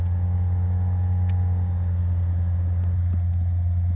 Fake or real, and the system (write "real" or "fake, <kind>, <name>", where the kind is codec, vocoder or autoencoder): real